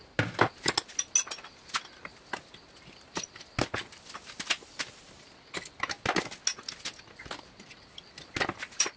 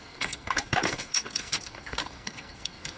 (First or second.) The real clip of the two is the first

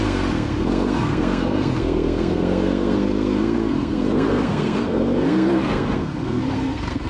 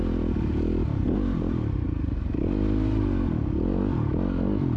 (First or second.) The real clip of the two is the second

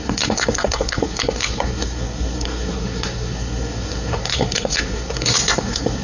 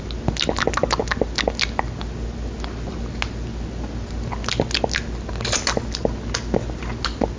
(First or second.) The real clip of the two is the second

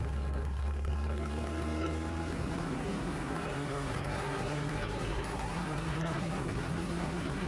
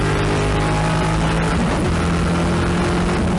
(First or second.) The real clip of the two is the second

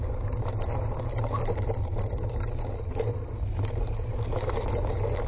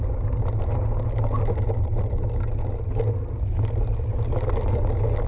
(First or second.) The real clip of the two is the second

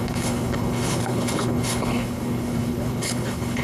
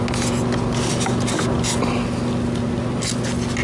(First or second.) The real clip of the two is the second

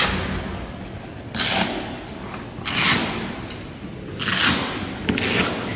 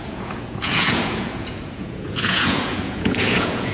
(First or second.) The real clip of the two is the first